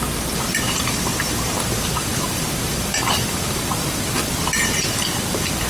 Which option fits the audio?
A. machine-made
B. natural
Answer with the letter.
A